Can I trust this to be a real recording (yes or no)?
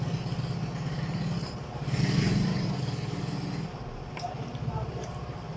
yes